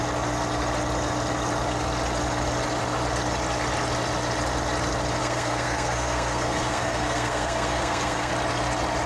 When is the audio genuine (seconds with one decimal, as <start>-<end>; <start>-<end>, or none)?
0.0-5.2; 8.3-9.1